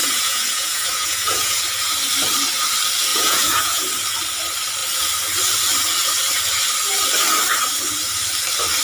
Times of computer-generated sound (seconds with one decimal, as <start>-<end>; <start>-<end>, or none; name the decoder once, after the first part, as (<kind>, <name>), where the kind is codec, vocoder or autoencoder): 0.0-1.6 (vocoder, Vocos); 3.1-3.8